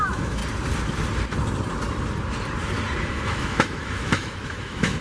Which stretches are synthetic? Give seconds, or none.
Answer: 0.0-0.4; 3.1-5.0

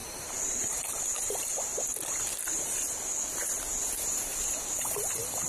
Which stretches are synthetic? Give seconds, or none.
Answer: 0.0-1.5; 4.8-5.5

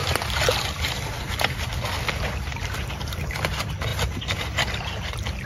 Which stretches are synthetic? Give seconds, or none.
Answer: none

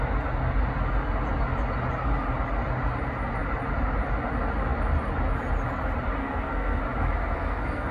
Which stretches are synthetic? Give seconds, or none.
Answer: 6.2-6.8; 7.2-7.9

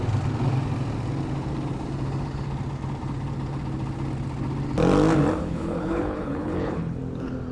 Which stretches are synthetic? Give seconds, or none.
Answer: 5.4-7.0

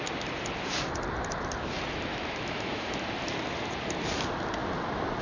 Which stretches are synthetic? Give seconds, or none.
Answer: 2.1-3.1